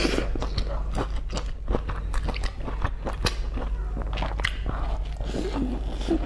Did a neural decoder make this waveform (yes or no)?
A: no